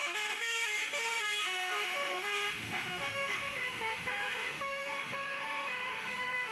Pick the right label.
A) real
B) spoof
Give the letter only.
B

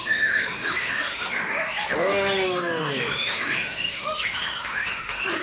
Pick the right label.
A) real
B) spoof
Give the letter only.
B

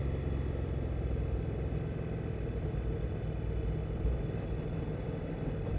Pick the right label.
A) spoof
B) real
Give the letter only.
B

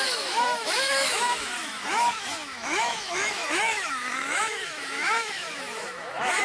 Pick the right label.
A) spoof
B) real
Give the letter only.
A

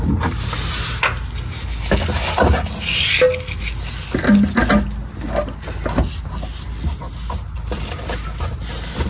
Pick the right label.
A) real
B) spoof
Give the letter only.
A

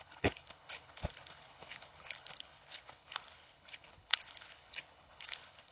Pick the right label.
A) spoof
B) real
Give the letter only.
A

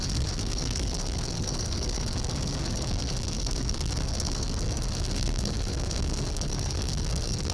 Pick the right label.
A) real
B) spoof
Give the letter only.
B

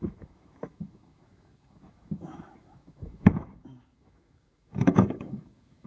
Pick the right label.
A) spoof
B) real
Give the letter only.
A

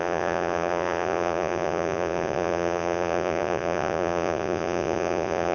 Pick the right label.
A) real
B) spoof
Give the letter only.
B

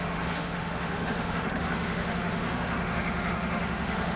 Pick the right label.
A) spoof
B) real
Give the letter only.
A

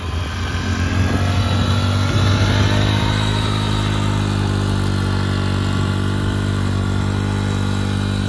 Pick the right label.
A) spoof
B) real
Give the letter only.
B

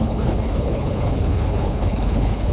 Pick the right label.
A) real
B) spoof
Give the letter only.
B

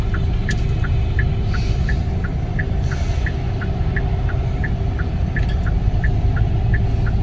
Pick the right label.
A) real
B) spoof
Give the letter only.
A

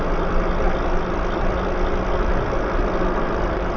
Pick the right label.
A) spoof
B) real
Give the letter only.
B